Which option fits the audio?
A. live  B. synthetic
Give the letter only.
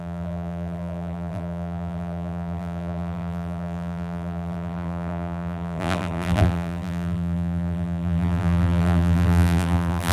B